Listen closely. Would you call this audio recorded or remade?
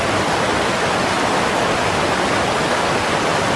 recorded